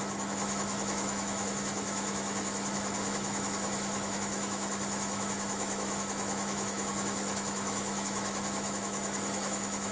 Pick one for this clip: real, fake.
fake